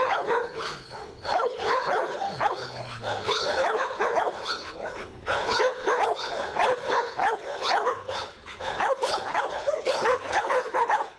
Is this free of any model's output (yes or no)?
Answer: no